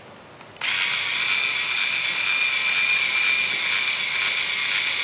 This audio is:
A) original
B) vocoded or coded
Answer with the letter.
A